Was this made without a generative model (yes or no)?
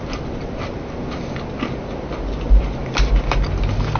yes